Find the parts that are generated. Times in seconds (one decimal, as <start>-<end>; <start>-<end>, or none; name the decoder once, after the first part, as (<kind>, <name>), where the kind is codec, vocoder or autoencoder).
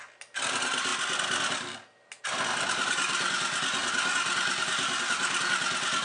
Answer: none